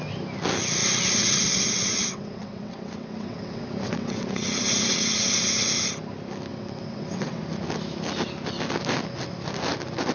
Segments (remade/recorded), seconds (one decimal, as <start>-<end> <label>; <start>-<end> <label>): 0.0-0.8 recorded; 0.8-5.9 remade; 5.9-6.5 recorded; 6.5-7.4 remade; 7.4-10.1 recorded